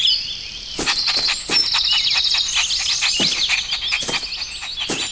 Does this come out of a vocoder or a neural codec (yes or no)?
no